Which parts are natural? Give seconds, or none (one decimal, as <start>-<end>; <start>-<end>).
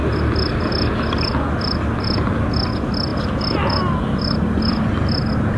0.0-5.6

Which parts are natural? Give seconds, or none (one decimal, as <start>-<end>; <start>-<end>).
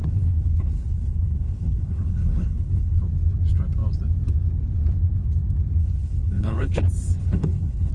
3.0-5.8; 6.8-7.2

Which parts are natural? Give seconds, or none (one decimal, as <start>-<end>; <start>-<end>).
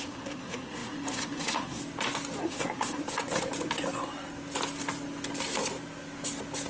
1.8-2.4; 3.0-6.7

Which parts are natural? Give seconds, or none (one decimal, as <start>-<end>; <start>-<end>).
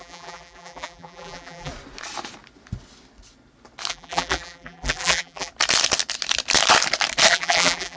1.7-3.9; 5.5-7.3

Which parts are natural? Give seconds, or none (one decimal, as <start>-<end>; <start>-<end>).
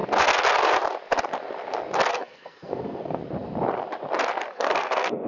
0.0-2.1; 3.2-4.5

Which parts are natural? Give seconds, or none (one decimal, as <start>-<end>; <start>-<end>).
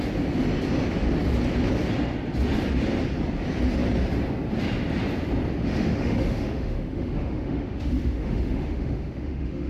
0.0-5.6